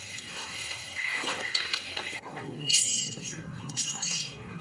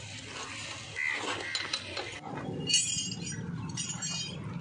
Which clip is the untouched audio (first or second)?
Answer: second